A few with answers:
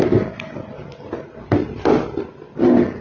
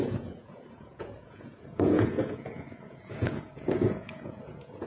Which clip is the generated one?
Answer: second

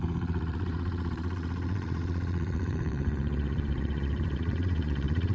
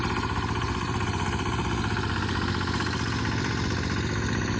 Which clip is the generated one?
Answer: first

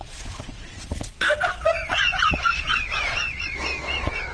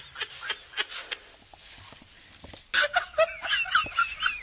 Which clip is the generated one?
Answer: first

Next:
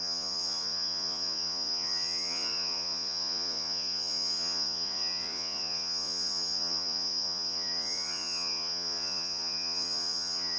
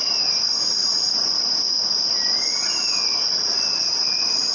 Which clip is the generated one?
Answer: first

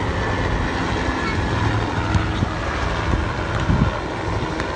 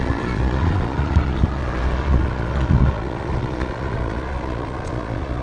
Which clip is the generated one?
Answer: second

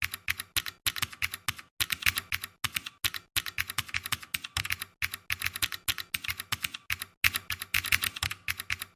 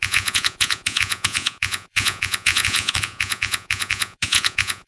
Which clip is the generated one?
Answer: second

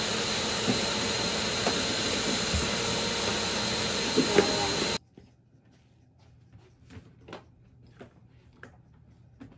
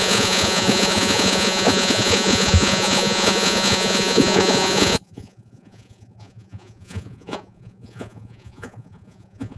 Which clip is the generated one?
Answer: second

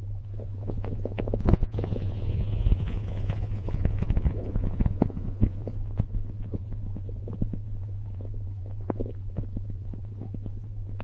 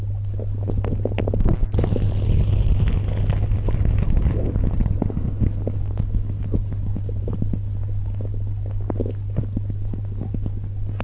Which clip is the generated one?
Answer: first